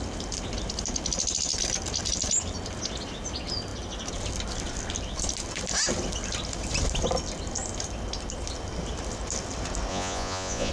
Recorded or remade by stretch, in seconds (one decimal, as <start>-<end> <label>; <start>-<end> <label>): 0.0-9.9 recorded; 9.9-10.7 remade